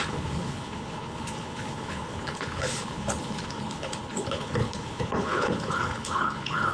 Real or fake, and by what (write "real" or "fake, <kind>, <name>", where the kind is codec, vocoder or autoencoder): fake, codec, HILCodec